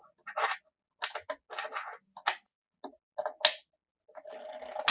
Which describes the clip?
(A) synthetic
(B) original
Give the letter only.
B